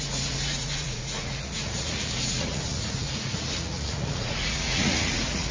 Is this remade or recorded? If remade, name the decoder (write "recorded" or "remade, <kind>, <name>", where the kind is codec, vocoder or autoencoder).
remade, vocoder, Vocos